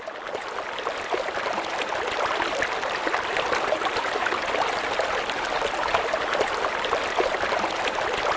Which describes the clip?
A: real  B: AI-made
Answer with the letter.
A